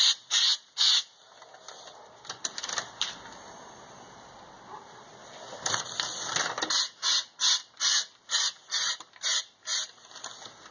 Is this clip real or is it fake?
real